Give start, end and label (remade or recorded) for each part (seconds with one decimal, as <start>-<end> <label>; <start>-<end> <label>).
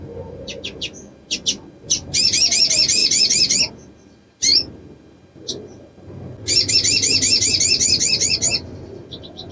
0.0-9.5 recorded